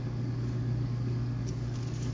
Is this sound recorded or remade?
remade